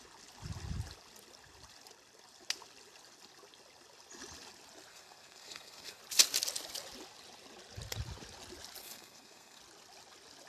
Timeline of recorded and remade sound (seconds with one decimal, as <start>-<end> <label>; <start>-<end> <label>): 0.0-4.9 recorded; 4.9-6.0 remade; 6.0-8.8 recorded; 8.8-9.6 remade; 9.6-10.5 recorded